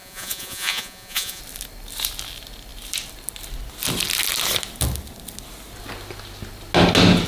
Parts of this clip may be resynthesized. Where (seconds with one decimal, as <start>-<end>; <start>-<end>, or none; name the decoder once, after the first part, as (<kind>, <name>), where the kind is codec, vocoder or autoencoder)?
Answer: 0.0-1.4 (vocoder, Vocos)